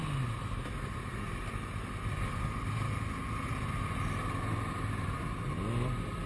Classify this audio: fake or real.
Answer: real